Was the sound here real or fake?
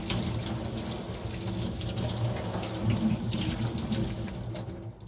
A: real